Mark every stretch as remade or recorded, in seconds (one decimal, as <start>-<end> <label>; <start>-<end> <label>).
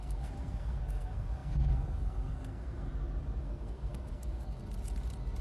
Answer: 0.0-2.9 remade; 2.9-3.4 recorded; 3.4-4.6 remade; 4.6-5.4 recorded